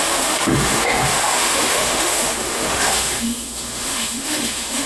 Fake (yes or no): yes